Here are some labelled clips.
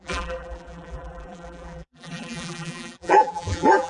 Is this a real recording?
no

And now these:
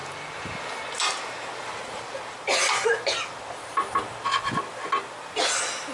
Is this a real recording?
yes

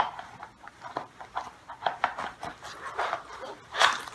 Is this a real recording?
no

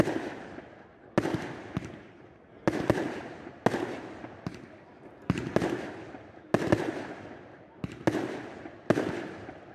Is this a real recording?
yes